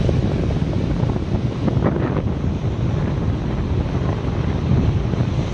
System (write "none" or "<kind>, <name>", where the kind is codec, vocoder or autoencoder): none